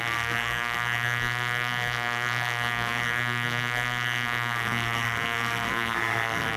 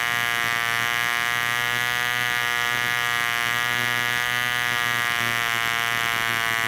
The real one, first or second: second